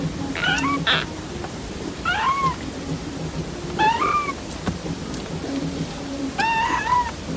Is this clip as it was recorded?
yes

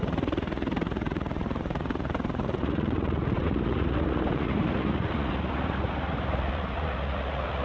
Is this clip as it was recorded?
no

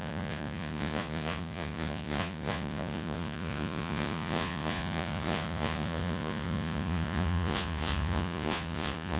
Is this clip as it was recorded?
no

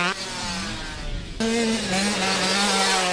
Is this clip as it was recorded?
yes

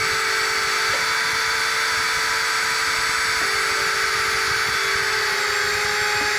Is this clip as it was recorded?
yes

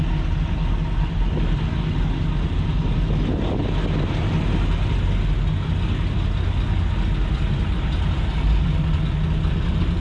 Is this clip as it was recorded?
yes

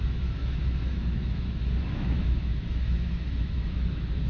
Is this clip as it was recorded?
no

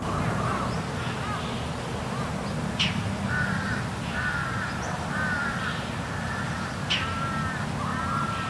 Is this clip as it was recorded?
yes